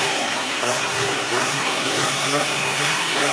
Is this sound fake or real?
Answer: fake